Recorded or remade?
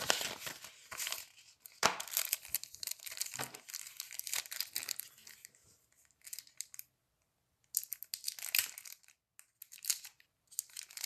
recorded